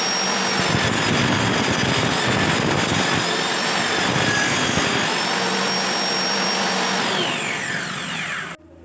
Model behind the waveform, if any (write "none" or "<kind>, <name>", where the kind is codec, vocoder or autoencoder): none